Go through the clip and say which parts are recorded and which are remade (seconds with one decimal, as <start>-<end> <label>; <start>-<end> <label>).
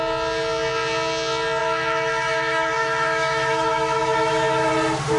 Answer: 0.0-1.6 recorded; 1.6-4.7 remade; 4.7-5.2 recorded